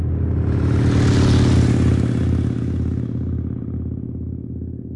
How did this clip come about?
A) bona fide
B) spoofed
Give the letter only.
A